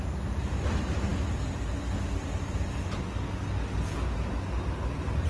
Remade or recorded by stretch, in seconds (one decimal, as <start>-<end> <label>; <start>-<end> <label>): 0.0-5.3 recorded